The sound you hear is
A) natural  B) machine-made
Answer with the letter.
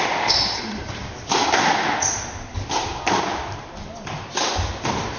A